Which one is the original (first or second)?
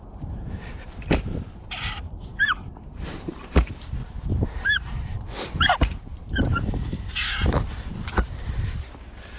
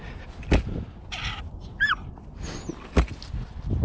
second